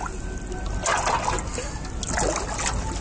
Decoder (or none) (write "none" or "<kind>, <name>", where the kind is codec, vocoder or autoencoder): none